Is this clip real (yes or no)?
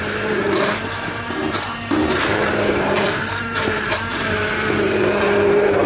no